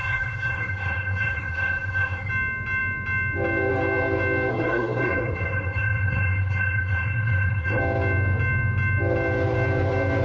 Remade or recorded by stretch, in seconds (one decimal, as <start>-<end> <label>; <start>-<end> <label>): 0.0-2.3 remade; 2.3-4.5 recorded; 4.5-7.8 remade; 7.8-10.2 recorded